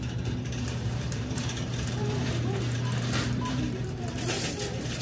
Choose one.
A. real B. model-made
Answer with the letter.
B